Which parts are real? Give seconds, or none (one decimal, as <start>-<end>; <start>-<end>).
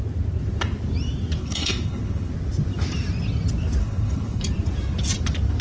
0.0-1.4; 2.3-3.8; 4.4-5.6